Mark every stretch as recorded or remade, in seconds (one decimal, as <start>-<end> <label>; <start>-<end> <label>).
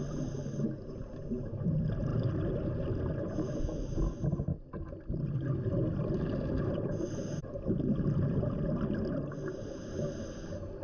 0.0-10.8 recorded